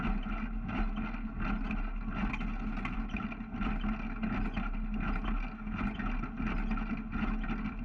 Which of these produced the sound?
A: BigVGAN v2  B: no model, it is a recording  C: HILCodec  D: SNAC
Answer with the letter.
B